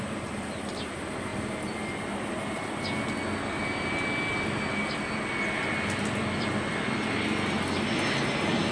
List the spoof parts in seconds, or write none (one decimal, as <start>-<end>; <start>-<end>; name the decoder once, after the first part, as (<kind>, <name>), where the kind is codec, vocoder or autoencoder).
none